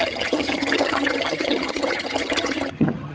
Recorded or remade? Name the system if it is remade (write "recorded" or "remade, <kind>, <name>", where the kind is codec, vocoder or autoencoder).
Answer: remade, vocoder, HiFi-GAN